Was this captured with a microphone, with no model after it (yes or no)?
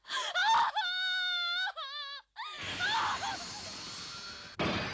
yes